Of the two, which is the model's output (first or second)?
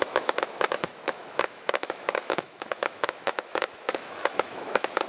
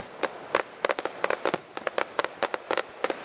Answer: first